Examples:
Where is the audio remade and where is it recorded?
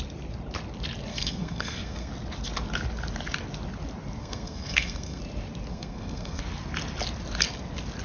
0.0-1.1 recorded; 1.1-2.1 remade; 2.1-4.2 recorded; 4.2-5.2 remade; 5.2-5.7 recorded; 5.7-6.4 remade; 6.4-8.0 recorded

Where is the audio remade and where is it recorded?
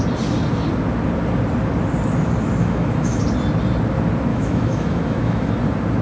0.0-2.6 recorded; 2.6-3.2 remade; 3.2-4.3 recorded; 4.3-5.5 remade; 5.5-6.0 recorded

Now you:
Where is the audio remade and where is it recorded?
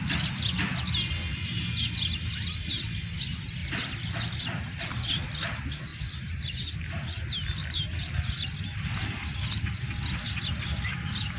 0.0-11.4 recorded